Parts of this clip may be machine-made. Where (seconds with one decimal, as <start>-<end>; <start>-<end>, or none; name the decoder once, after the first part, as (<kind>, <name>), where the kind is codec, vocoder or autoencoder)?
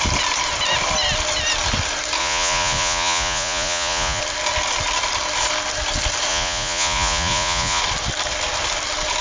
2.2-4.2 (vocoder, Vocos); 6.3-7.8